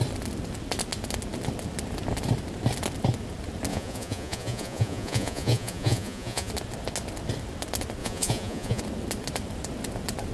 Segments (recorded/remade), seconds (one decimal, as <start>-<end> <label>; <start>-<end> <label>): 0.0-3.7 recorded; 3.7-6.5 remade; 6.5-8.0 recorded; 8.0-8.8 remade; 8.8-10.3 recorded

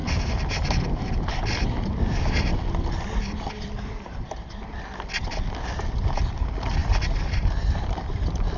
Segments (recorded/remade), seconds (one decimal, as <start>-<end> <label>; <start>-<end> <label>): 0.0-8.6 recorded